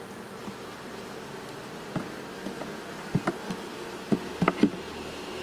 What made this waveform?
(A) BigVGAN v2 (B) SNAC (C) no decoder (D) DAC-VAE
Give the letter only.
C